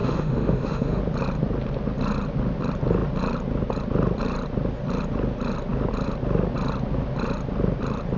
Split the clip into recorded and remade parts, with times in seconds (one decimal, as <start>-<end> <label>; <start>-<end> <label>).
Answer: 0.0-1.0 remade; 1.0-8.2 recorded